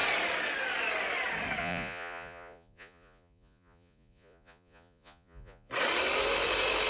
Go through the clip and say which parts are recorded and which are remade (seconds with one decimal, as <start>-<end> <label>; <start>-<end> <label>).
0.0-1.6 recorded; 1.6-5.7 remade; 5.7-6.9 recorded